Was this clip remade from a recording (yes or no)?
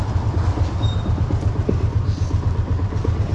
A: no